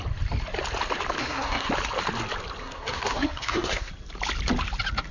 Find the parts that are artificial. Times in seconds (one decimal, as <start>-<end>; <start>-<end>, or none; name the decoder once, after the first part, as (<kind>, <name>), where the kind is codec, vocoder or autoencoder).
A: 1.2-1.7 (codec, SNAC); 2.6-3.9

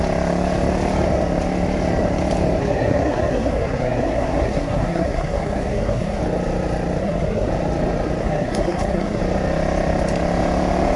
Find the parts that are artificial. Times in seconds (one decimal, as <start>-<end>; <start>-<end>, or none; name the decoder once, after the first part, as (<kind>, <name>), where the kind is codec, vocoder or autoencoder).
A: 2.6-6.2 (codec, SNAC); 7.0-7.5; 8.2-9.2